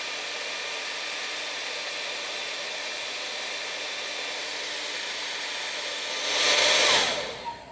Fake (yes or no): no